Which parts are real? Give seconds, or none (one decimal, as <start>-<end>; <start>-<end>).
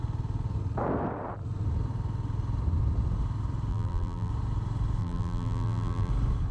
0.0-3.7; 4.3-5.0; 6.1-6.5